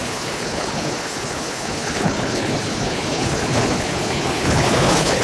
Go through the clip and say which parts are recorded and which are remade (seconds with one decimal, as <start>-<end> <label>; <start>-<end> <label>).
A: 0.0-5.2 remade